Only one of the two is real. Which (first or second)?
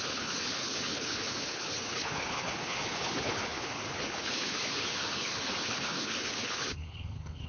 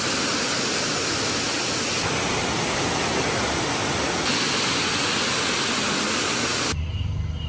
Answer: second